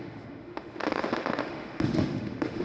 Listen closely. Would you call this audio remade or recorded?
remade